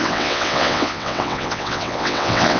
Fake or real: fake